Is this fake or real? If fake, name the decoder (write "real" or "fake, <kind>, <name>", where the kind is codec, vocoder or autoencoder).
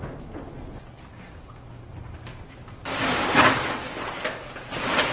real